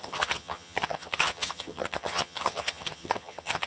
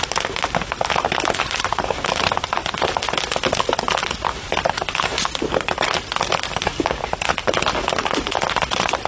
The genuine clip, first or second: second